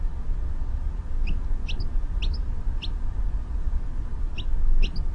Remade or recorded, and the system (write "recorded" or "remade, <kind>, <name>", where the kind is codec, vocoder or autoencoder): recorded